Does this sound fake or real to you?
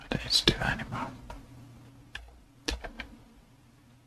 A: real